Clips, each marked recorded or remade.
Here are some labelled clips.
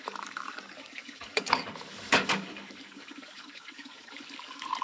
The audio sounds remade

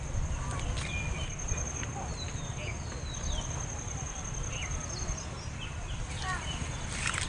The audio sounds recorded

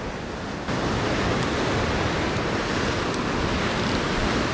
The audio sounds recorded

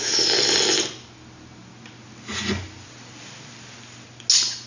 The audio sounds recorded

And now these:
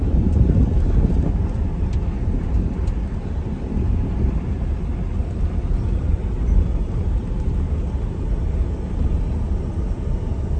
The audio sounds recorded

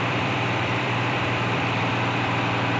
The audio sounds remade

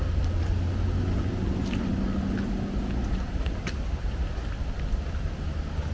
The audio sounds recorded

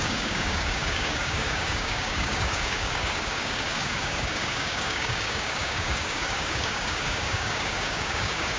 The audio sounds remade